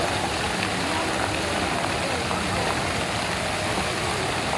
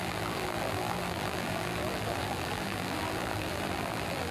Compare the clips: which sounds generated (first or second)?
second